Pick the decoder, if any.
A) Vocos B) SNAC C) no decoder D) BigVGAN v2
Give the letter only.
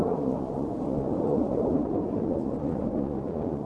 A